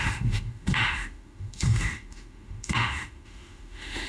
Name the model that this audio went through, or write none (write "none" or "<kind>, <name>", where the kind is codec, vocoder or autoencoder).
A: autoencoder, DAC-VAE